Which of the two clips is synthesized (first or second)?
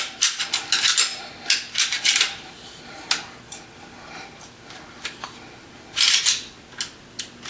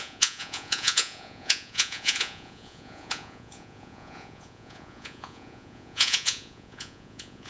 second